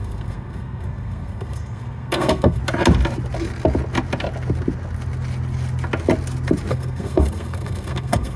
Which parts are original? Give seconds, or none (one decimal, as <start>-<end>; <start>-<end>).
2.6-6.7